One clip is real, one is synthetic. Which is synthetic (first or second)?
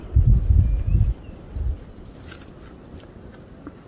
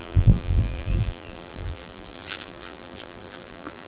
second